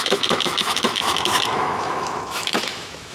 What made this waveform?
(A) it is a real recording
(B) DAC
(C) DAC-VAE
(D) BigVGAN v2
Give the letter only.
C